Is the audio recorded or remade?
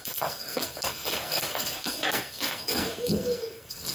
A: remade